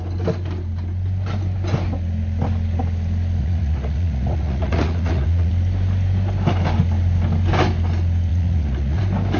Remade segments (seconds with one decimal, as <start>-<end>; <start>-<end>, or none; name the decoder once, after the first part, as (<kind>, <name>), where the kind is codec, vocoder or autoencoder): 3.4-5.5 (vocoder, Vocos); 8.3-9.0